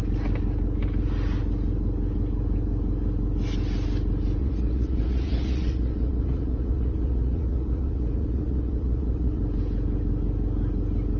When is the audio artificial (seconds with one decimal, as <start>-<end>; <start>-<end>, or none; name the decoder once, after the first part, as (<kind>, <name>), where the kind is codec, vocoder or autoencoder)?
4.4-9.4 (vocoder, Vocos)